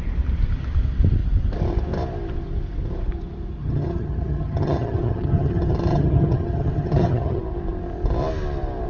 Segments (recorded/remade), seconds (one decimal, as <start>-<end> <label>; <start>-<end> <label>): 0.0-3.6 recorded; 3.6-7.4 remade; 7.4-8.9 recorded

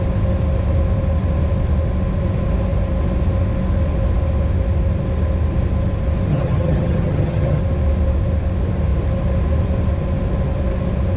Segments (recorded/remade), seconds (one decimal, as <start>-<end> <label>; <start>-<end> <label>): 0.0-6.3 recorded; 6.3-7.6 remade; 7.6-11.2 recorded

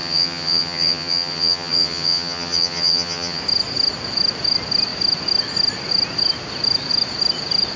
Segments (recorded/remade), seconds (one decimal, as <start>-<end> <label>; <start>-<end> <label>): 0.0-3.4 remade; 3.4-7.8 recorded

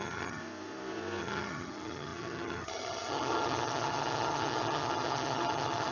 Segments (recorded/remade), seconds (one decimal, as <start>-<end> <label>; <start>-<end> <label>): 0.0-0.4 remade; 0.4-1.2 recorded; 1.2-5.9 remade

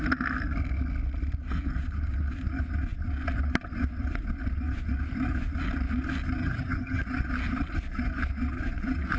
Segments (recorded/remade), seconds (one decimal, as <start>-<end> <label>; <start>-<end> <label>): 0.0-6.4 recorded; 6.4-7.0 remade; 7.0-9.2 recorded

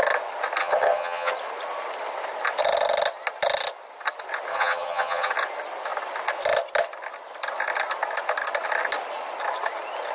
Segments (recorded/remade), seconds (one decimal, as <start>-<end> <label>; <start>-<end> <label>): 0.0-0.6 recorded; 0.6-1.3 remade; 1.3-4.5 recorded; 4.5-5.3 remade; 5.3-10.1 recorded